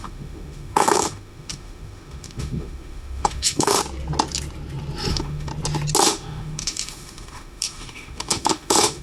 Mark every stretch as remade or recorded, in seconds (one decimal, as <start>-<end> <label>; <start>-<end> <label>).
0.0-3.8 remade; 3.8-5.1 recorded; 5.1-5.5 remade; 5.5-6.0 recorded; 6.0-9.0 remade